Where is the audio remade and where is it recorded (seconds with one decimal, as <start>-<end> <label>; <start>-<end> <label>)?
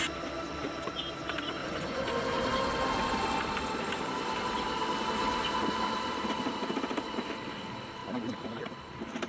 0.0-1.6 recorded; 1.6-2.1 remade; 2.1-9.3 recorded